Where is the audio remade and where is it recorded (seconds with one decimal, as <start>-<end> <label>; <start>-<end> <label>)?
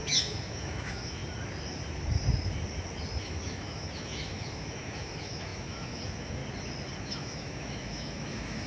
0.0-1.2 remade; 1.2-3.2 recorded; 3.2-6.4 remade; 6.4-7.0 recorded; 7.0-8.7 remade